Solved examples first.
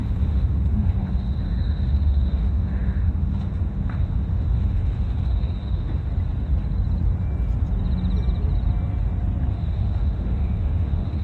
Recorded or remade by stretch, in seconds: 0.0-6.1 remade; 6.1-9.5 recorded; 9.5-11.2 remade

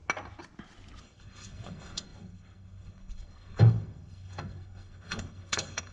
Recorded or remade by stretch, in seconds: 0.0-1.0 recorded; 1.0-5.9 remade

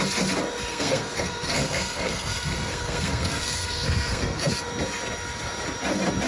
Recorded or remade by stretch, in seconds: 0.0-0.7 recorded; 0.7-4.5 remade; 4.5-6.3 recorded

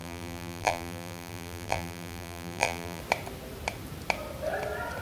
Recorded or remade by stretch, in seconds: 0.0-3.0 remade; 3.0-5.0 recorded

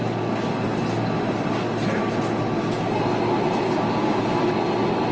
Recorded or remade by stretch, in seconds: 0.0-3.6 recorded; 3.6-4.2 remade; 4.2-5.1 recorded